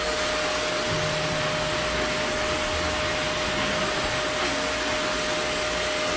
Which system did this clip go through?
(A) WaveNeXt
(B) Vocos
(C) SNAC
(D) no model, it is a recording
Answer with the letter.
D